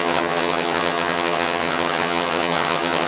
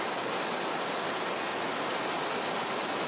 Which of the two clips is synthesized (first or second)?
first